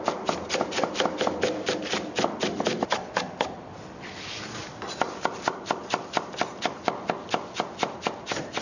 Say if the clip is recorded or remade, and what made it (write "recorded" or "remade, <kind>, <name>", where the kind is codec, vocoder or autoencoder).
recorded